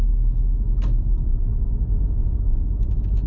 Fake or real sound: real